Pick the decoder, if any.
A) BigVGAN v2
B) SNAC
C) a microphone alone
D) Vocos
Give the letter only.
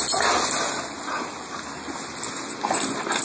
C